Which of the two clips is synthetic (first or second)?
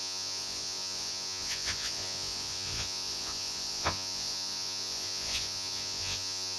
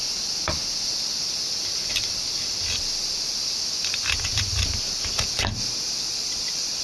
first